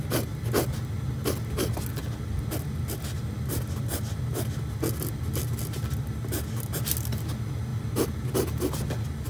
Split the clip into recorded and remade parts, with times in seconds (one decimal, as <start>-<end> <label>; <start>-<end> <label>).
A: 0.0-9.3 recorded